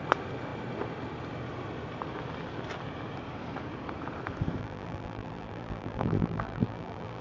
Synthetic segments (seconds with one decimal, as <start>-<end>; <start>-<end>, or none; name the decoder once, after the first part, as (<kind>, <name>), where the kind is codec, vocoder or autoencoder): 4.6-7.2 (vocoder, BigVGAN v2)